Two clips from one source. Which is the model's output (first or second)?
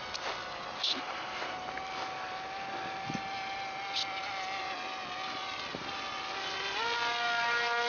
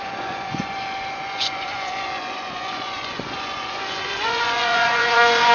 second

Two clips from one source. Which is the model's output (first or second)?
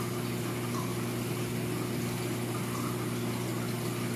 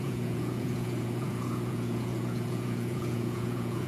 second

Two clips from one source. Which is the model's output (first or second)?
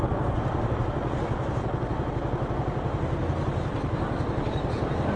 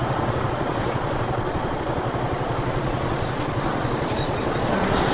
second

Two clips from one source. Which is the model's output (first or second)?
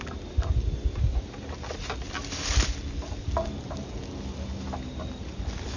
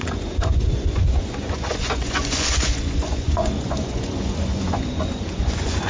second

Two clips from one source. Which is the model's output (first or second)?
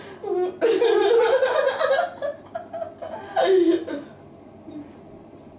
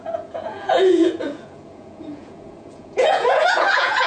second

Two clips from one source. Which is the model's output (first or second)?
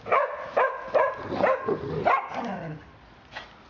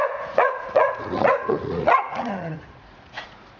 second